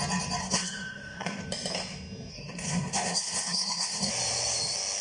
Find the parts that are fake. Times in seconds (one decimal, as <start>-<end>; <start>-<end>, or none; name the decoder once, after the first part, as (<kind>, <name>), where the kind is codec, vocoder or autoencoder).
0.4-1.4 (codec, SNAC); 2.3-4.1